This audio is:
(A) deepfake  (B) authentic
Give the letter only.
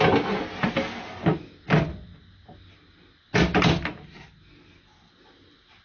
B